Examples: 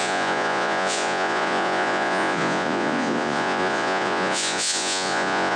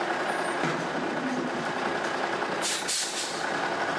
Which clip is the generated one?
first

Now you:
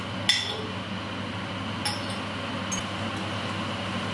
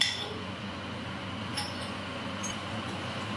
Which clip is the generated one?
second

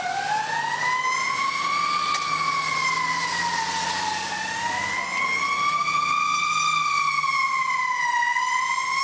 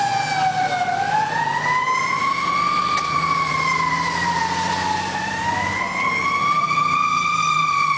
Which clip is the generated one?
second